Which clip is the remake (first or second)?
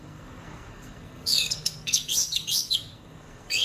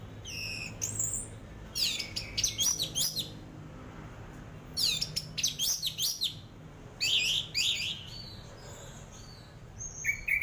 first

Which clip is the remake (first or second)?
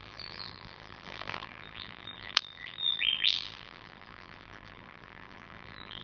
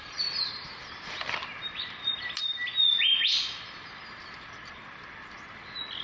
first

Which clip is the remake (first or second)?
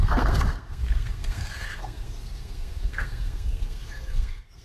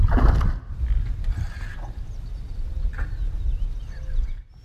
first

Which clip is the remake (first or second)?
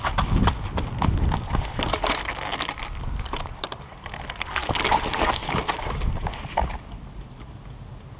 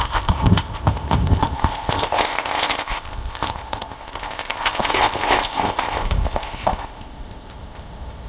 second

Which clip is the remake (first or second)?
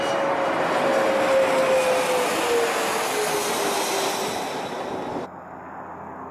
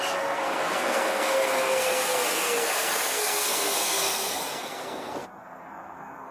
second